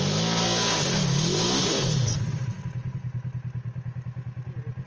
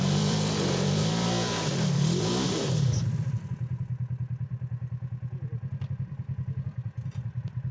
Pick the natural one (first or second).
first